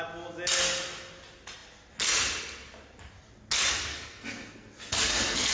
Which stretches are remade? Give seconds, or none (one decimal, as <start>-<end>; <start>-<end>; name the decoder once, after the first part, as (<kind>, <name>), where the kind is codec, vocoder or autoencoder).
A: 3.9-5.5 (codec, SNAC)